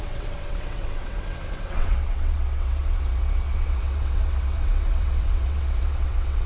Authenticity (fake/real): fake